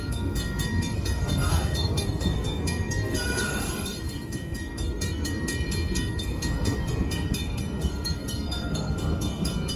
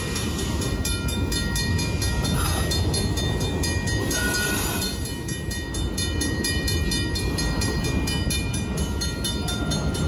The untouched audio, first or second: second